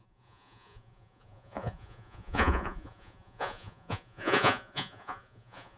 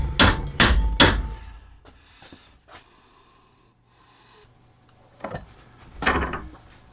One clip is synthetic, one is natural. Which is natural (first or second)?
second